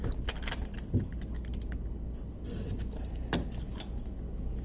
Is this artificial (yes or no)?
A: no